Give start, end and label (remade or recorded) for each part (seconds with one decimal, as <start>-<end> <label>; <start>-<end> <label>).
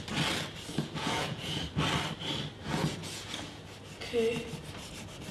0.0-0.7 recorded; 0.7-1.6 remade; 1.6-3.0 recorded; 3.0-3.6 remade; 3.6-5.3 recorded